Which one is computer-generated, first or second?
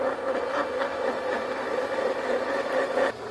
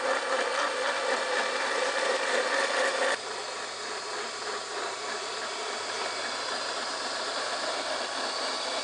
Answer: second